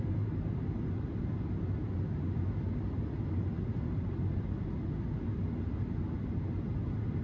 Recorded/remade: recorded